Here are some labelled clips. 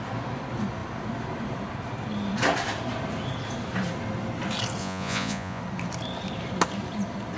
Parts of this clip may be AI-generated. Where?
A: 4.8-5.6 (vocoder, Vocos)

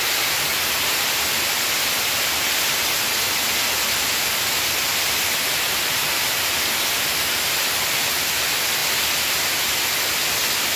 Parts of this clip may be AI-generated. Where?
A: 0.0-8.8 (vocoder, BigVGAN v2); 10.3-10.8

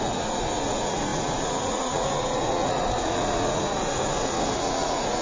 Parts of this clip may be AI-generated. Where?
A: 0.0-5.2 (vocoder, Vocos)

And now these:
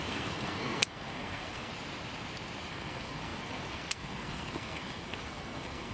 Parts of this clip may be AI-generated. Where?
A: 0.0-1.7 (codec, SNAC); 2.7-5.9

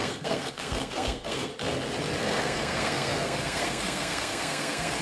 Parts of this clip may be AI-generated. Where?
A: 0.0-1.5 (codec, SNAC); 2.2-5.0